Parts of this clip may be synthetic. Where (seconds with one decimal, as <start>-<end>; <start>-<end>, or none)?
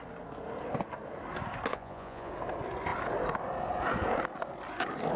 1.7-2.3